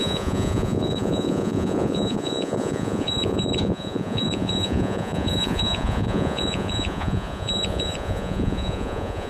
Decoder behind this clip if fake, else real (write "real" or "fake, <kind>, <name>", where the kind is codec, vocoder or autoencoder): fake, vocoder, Vocos